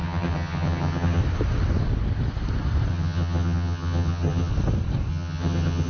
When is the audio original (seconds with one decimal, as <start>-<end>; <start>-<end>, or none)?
1.2-2.9; 4.5-5.1